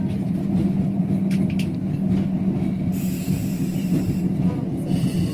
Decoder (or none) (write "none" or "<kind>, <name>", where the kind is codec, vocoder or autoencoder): none